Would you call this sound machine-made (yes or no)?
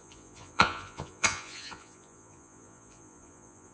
yes